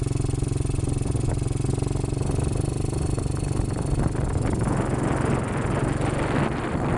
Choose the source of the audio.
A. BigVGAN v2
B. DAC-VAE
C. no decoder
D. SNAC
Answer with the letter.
C